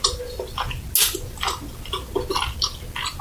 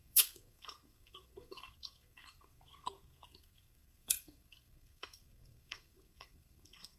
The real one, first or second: first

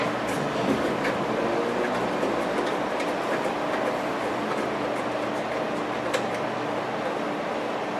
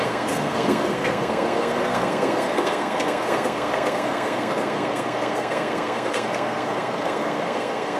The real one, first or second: first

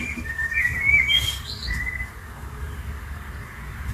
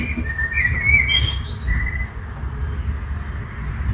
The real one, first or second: second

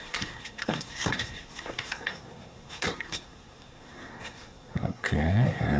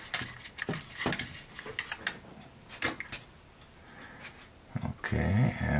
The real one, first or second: second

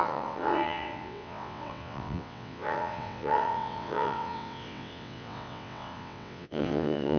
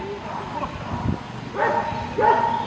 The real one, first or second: second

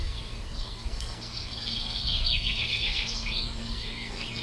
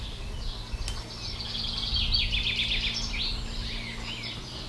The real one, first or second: second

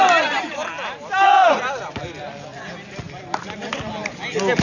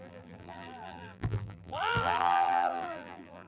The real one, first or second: first